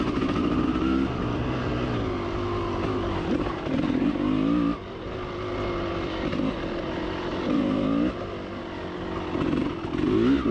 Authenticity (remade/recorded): recorded